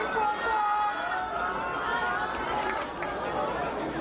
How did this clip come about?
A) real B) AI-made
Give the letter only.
A